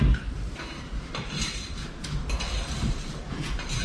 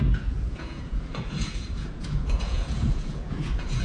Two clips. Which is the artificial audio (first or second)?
second